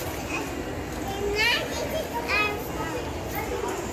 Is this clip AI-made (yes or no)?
no